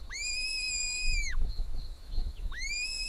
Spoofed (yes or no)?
yes